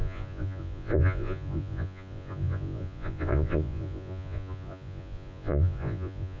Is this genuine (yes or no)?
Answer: no